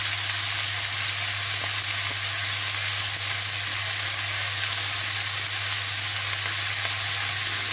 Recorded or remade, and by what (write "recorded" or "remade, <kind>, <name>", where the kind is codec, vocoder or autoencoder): recorded